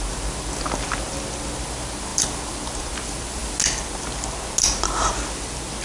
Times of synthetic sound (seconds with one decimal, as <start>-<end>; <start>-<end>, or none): none